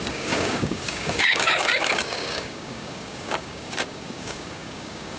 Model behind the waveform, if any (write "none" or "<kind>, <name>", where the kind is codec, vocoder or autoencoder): codec, DAC